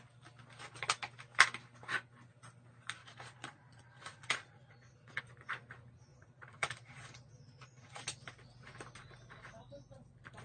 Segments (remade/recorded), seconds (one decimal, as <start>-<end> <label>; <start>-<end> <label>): 0.0-3.0 recorded; 3.0-5.2 remade; 5.2-6.1 recorded; 6.1-7.9 remade; 7.9-10.4 recorded